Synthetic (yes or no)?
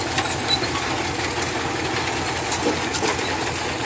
no